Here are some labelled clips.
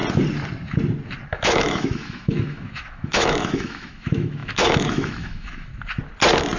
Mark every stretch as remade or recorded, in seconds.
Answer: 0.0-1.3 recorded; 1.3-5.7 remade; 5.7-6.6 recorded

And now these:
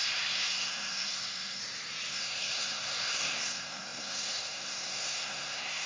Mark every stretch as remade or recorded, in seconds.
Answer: 0.0-1.6 remade; 1.6-2.1 recorded; 2.1-5.9 remade

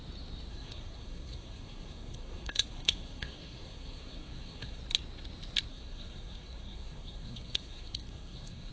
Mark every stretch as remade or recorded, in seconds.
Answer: 0.0-0.5 recorded; 0.5-4.8 remade; 4.8-5.7 recorded; 5.7-8.7 remade

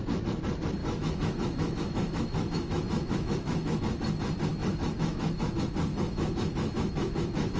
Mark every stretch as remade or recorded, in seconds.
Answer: 0.0-0.8 recorded; 0.8-3.8 remade; 3.8-4.6 recorded; 4.6-5.5 remade; 5.5-5.9 recorded; 5.9-7.6 remade

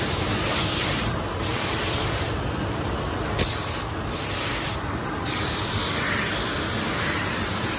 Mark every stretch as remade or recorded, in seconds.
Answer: 0.0-1.5 recorded; 1.5-6.2 remade; 6.2-7.8 recorded

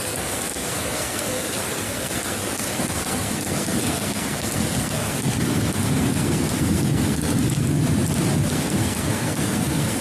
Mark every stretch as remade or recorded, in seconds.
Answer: 0.0-7.8 remade; 7.8-8.5 recorded; 8.5-10.0 remade